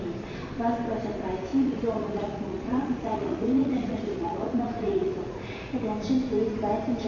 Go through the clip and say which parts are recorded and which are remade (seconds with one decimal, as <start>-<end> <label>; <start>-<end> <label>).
0.0-1.5 recorded; 1.5-5.8 remade; 5.8-7.1 recorded